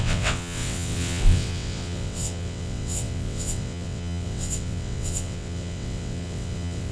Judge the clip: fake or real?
fake